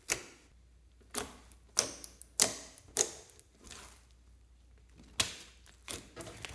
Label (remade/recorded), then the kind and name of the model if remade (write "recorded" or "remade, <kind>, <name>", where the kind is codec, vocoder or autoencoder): recorded